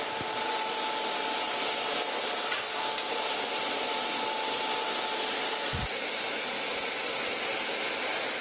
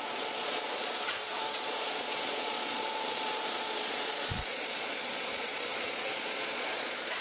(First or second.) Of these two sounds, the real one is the first